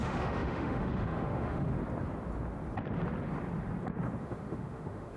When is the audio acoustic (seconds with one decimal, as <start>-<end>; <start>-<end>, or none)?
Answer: 1.8-4.2